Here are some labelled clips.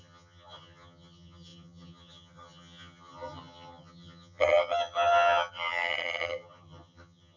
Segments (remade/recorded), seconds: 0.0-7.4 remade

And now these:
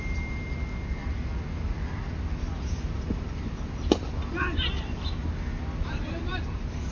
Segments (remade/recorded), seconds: 0.0-6.9 recorded

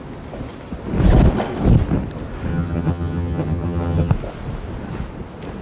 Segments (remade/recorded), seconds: 0.0-2.5 recorded; 2.5-4.1 remade; 4.1-5.6 recorded

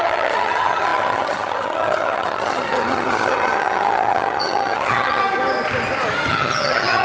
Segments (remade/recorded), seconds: 0.0-5.2 remade; 5.2-6.3 recorded; 6.3-7.0 remade

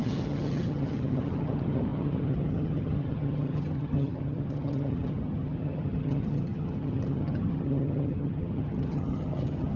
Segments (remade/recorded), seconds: 0.0-9.8 remade

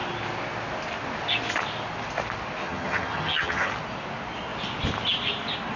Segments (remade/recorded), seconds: 0.0-2.6 recorded; 2.6-3.7 remade; 3.7-5.8 recorded

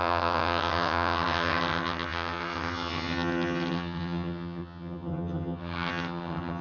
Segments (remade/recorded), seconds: 0.0-6.6 remade

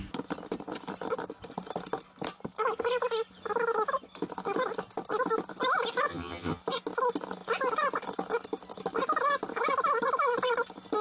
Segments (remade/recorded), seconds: 0.0-6.1 recorded; 6.1-6.6 remade; 6.6-11.0 recorded